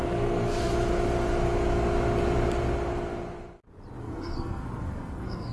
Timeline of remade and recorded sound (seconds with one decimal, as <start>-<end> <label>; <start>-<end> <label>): 0.0-0.7 remade; 0.7-4.0 recorded; 4.0-5.5 remade